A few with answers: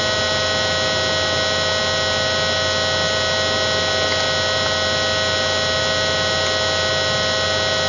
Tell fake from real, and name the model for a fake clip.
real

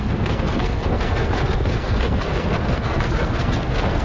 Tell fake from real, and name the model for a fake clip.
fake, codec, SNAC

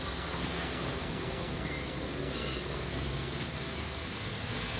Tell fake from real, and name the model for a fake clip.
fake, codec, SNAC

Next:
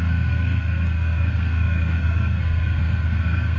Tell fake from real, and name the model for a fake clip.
fake, codec, SNAC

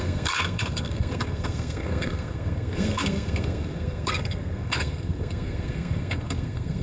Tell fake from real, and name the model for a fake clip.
fake, codec, SNAC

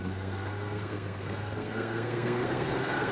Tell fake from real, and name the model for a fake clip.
fake, codec, SNAC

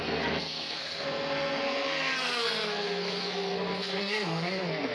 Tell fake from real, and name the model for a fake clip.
fake, codec, SNAC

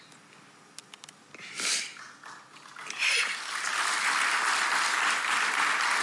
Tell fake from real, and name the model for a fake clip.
real